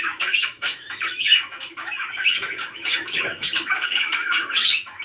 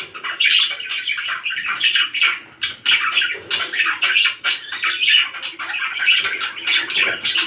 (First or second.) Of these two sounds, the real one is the second